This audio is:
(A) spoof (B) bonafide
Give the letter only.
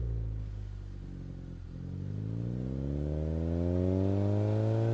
B